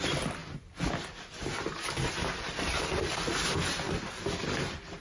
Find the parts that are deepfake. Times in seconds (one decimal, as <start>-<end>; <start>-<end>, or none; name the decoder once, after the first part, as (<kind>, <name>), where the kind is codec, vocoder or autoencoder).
none